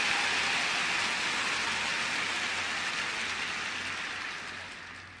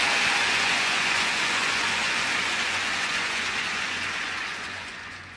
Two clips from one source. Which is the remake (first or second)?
second